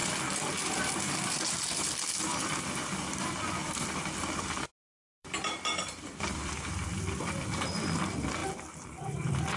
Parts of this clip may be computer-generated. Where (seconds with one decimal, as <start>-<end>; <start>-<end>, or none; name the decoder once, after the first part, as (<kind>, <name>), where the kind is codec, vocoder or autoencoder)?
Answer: 0.6-9.6 (vocoder, BigVGAN v2)

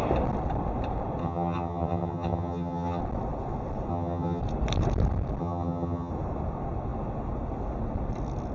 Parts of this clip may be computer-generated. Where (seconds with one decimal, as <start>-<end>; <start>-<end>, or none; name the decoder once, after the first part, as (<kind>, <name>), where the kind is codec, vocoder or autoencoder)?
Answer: 1.2-3.0 (vocoder, HiFi-GAN); 3.9-4.4; 5.4-6.1

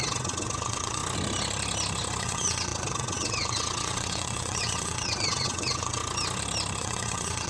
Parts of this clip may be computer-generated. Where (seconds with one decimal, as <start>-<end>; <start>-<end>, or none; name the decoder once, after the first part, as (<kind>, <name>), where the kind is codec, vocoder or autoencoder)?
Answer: 0.0-1.0 (vocoder, WaveNeXt); 2.2-6.0; 6.8-7.5

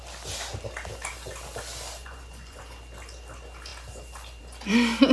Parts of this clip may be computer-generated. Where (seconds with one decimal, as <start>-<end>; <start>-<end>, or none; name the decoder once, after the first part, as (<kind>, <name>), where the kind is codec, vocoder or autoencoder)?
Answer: 2.0-2.6 (vocoder, Vocos)

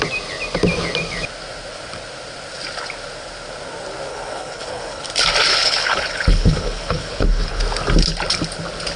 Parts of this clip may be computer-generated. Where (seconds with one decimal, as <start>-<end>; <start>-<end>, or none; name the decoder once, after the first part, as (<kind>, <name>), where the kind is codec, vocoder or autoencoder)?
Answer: 4.1-5.0 (codec, HILCodec); 5.5-7.6

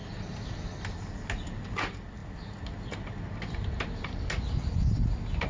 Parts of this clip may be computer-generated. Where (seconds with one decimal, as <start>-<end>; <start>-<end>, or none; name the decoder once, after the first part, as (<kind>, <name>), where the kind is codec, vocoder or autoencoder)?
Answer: none

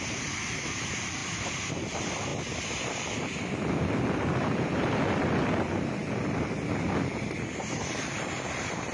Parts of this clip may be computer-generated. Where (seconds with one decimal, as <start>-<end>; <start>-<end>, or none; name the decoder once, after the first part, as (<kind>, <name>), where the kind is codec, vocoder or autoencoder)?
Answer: 0.0-2.3 (vocoder, BigVGAN v2); 3.5-8.9

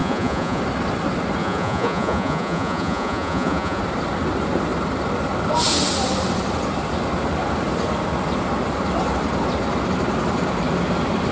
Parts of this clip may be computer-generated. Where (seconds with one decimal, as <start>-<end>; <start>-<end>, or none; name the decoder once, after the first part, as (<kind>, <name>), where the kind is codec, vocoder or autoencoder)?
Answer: 0.0-0.6 (vocoder, Vocos); 1.4-3.8